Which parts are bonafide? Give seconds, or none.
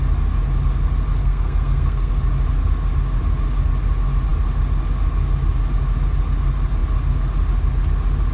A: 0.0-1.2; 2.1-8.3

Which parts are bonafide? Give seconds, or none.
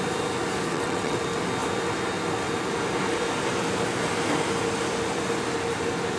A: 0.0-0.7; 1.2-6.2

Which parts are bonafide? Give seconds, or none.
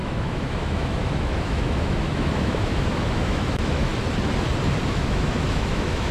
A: 3.9-4.9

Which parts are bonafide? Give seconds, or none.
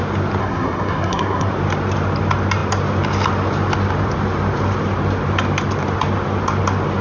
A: 0.0-0.4; 1.5-7.0